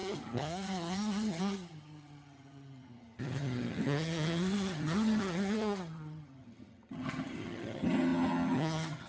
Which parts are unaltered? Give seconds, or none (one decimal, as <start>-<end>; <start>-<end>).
none

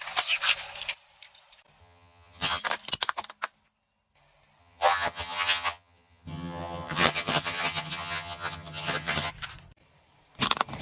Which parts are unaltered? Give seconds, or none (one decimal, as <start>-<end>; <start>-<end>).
0.0-1.8; 2.6-4.6; 9.3-10.8

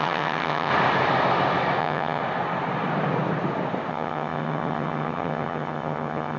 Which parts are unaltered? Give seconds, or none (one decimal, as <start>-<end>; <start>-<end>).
0.7-1.8; 2.2-3.9

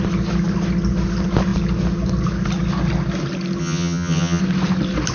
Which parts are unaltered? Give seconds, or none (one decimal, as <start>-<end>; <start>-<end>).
0.0-3.6; 4.4-5.1

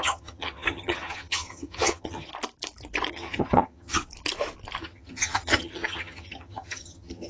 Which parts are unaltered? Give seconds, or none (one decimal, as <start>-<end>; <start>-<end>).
2.3-3.1; 4.0-4.8

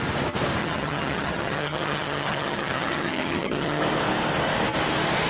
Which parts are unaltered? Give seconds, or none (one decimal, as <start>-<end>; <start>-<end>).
0.0-0.6; 3.8-5.3